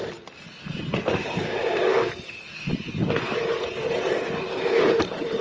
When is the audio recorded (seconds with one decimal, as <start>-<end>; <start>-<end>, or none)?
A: 0.0-1.2; 2.1-5.4

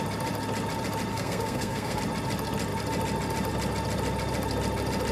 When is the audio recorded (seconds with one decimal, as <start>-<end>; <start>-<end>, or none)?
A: 0.0-1.1; 2.0-5.1

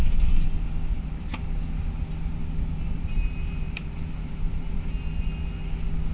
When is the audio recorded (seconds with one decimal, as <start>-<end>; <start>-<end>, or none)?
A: 0.0-0.9; 1.4-2.4; 5.3-6.1

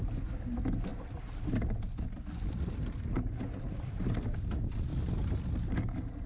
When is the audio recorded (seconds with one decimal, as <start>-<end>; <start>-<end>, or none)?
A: 0.0-6.3